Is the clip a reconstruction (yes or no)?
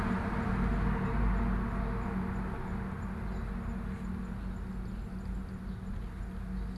no